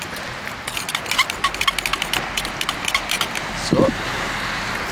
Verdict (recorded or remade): recorded